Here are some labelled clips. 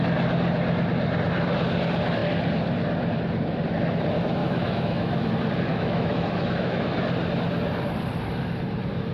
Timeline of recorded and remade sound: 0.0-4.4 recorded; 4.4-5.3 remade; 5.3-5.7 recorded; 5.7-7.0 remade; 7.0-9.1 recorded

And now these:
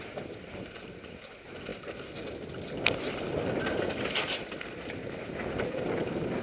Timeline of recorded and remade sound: 0.0-6.4 recorded

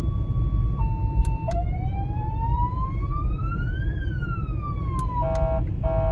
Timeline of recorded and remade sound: 0.0-1.2 recorded; 1.2-4.9 remade; 4.9-6.1 recorded

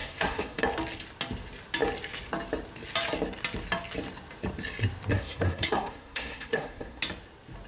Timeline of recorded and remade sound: 0.0-0.6 remade; 0.6-5.1 recorded; 5.1-7.0 remade; 7.0-7.7 recorded

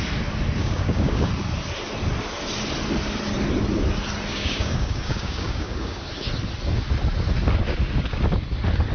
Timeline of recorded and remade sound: 0.0-0.6 recorded; 0.6-1.3 remade; 1.3-4.3 recorded; 4.3-6.0 remade; 6.0-8.9 recorded

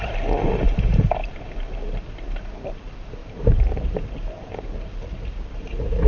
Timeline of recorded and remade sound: 0.0-3.2 recorded; 3.2-6.1 remade

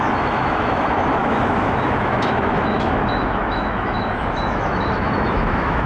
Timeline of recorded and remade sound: 0.0-5.9 remade